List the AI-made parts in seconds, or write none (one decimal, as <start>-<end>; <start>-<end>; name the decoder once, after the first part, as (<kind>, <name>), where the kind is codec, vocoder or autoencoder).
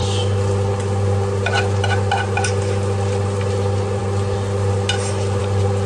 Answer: none